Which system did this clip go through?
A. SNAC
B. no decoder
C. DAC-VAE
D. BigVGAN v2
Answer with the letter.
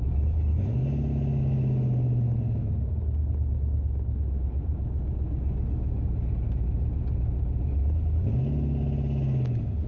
B